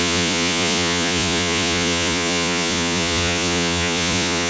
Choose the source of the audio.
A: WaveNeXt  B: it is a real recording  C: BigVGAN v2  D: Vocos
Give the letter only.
D